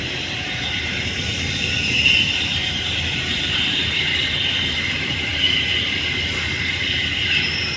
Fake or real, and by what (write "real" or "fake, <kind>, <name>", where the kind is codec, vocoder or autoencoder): fake, vocoder, BigVGAN v2